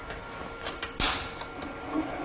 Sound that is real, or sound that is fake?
real